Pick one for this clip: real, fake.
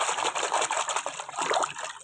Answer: real